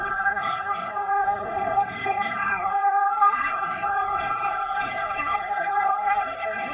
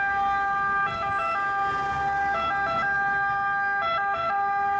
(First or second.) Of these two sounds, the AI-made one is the first